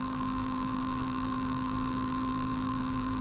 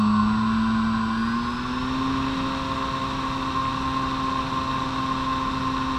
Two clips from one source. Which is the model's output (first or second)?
first